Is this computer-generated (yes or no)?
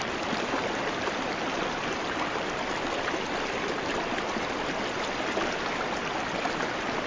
no